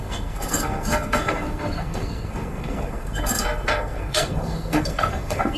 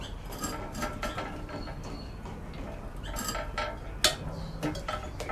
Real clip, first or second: second